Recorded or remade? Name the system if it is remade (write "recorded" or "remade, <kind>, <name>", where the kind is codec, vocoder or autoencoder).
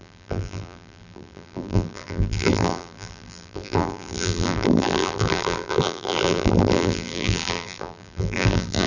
remade, vocoder, BigVGAN v2